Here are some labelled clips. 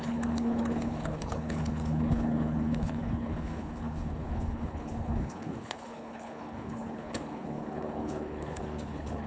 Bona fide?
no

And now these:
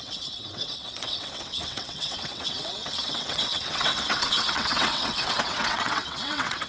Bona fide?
no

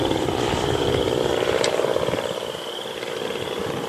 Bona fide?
no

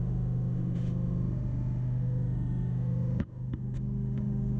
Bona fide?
no